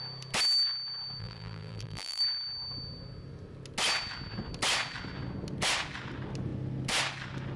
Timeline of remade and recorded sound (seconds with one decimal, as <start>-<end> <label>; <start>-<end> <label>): 0.0-1.2 recorded; 1.2-2.2 remade; 2.2-7.6 recorded